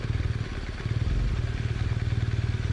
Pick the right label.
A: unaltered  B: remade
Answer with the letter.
A